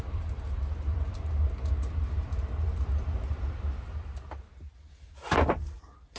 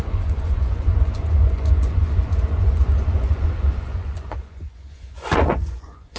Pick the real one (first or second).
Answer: first